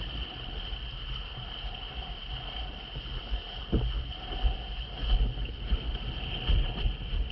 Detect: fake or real real